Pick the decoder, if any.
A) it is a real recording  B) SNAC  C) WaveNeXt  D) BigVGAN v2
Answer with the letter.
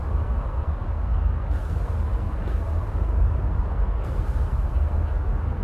B